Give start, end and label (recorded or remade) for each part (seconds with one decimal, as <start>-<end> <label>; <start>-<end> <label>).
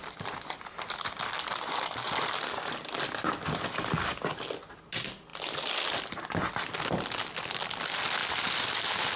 0.0-9.2 recorded